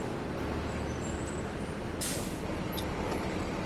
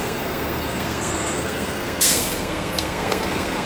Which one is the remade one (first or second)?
second